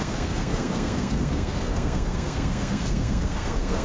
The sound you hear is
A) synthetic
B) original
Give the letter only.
A